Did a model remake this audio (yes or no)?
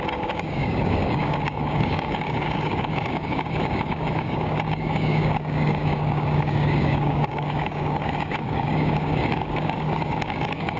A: yes